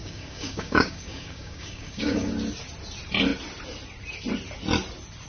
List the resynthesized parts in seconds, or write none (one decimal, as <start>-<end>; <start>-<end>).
0.0-2.3